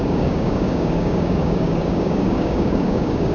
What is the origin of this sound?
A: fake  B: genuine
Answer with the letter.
A